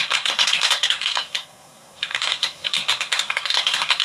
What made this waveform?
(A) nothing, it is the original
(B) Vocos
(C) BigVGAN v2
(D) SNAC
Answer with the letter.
D